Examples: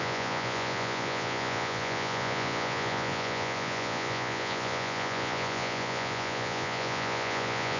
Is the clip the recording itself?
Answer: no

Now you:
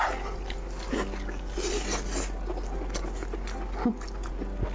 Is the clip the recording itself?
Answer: yes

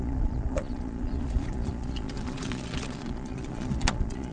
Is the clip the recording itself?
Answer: no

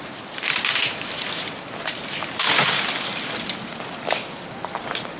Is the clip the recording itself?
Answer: yes